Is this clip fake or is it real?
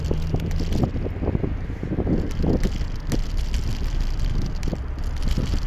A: real